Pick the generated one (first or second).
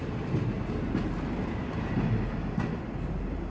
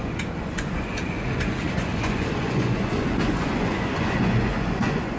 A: second